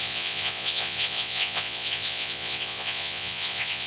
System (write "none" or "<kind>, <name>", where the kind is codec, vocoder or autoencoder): vocoder, Vocos